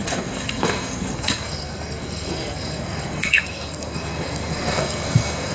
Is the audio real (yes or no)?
no